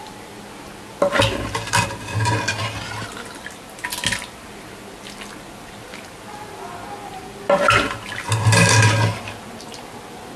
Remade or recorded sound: recorded